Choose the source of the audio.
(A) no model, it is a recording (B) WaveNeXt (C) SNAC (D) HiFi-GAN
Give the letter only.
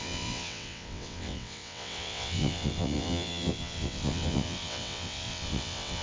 B